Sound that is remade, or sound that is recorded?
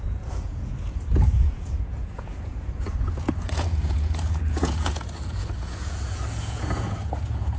remade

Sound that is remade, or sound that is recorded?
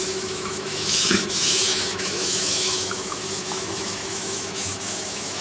remade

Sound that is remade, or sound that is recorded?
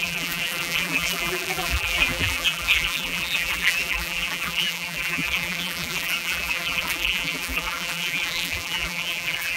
remade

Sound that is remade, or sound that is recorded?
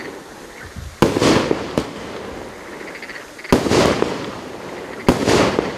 recorded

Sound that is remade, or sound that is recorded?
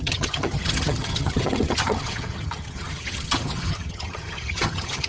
remade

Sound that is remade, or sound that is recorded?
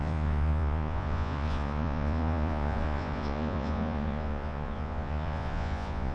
remade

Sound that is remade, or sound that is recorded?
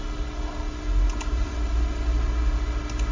recorded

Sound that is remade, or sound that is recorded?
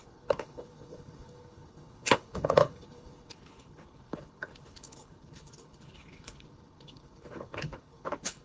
remade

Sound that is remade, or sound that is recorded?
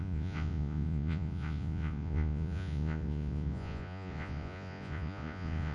remade